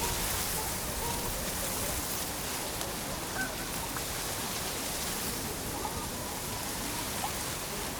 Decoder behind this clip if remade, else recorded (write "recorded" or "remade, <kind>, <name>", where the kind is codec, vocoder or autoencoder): recorded